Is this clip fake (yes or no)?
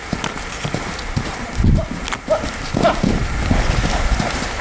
no